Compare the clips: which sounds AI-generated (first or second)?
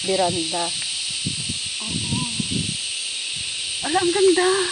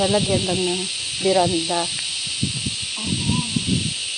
second